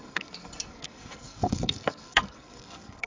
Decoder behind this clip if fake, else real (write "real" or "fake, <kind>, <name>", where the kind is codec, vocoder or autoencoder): fake, codec, SNAC